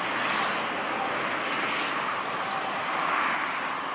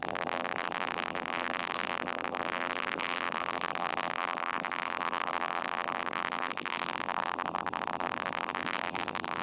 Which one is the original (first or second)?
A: first